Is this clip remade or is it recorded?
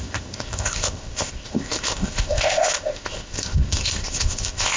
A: remade